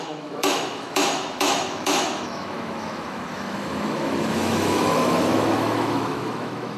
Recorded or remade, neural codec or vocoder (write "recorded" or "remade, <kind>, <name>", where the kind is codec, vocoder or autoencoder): remade, autoencoder, DAC-VAE